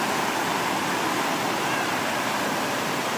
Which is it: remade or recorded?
recorded